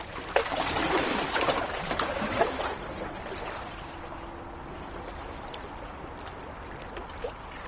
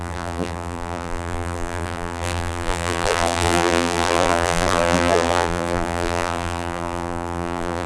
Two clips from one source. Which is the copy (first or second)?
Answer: second